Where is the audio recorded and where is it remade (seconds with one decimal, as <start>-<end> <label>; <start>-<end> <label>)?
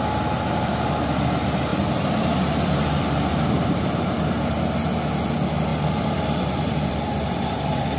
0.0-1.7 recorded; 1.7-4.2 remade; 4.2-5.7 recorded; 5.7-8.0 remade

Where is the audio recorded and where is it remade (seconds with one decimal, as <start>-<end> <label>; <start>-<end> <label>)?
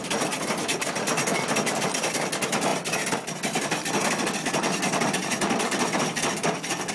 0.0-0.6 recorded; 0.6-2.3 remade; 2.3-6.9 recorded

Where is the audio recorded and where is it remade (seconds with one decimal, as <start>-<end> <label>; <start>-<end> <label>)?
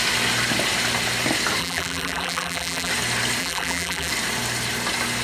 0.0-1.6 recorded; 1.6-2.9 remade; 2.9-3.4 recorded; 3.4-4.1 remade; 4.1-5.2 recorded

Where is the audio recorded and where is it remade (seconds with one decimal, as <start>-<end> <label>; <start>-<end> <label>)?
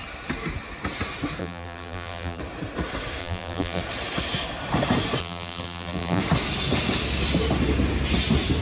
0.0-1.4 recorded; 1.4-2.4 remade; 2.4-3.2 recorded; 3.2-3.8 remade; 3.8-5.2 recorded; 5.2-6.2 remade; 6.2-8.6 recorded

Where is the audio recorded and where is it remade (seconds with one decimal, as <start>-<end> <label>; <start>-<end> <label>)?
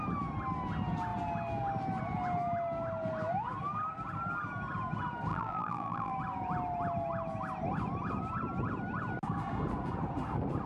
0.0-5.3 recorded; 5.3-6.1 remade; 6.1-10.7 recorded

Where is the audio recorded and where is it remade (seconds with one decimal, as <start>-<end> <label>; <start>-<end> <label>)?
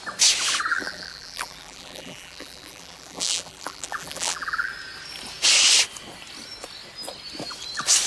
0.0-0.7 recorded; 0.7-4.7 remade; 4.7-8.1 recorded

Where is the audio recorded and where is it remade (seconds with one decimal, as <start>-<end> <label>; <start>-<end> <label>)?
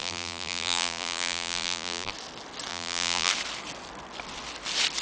0.0-2.1 remade; 2.1-2.7 recorded; 2.7-3.3 remade; 3.3-5.0 recorded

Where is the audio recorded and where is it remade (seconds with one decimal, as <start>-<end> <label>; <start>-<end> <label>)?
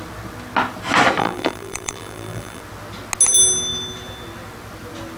0.0-1.2 recorded; 1.2-2.6 remade; 2.6-5.2 recorded